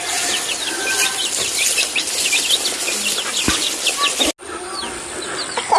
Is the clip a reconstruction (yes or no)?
no